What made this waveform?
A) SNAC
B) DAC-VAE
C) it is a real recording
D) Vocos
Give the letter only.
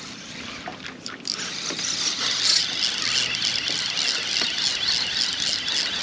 C